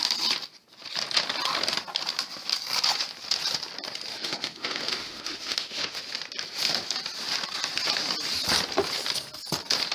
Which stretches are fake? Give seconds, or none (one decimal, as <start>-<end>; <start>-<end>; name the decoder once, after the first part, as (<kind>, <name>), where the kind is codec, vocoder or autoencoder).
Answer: 4.1-6.0 (autoencoder, DAC-VAE)